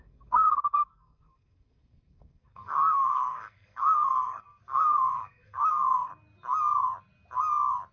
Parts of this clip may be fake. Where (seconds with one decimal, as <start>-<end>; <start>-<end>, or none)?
0.0-6.1